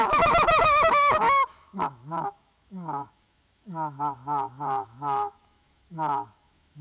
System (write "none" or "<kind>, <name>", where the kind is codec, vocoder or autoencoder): autoencoder, DAC-VAE